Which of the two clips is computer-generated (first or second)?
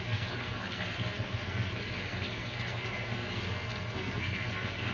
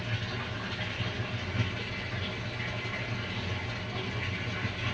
first